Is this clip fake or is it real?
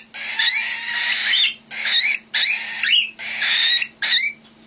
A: real